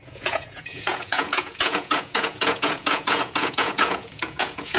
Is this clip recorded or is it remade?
remade